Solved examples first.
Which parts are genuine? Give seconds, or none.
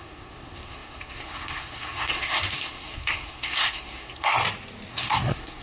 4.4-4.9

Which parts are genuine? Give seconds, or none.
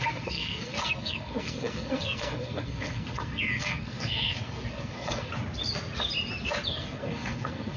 5.3-6.7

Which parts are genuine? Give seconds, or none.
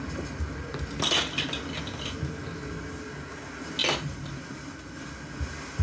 0.0-3.8; 4.5-5.8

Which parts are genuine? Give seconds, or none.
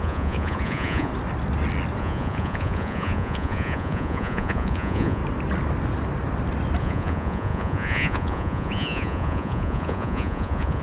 1.1-2.0; 5.2-6.8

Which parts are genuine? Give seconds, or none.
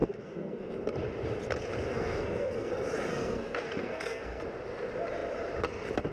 0.7-1.9; 2.7-3.1; 4.4-6.1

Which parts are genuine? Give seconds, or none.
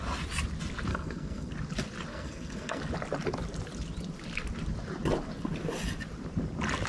0.0-0.9; 1.5-2.1; 2.8-6.9